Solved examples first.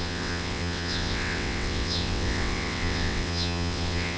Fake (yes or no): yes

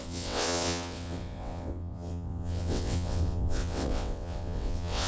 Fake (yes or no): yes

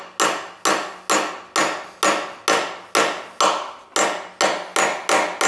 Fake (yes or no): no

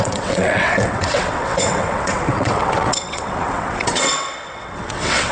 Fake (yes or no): yes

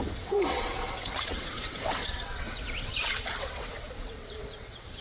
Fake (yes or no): yes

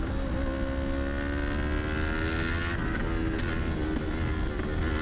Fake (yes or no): no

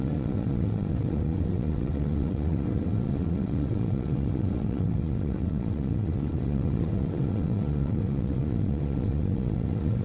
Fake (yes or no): yes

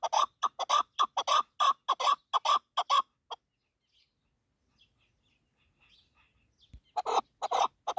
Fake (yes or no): no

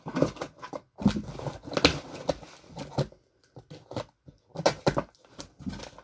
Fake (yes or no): no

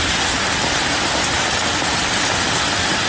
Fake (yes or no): no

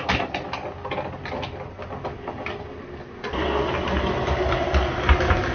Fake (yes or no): no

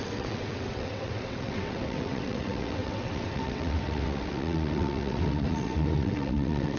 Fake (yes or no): yes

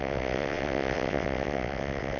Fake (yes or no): yes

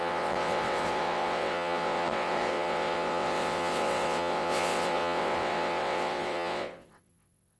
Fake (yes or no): yes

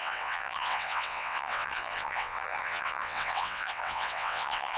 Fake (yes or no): yes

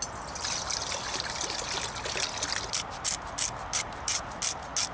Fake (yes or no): no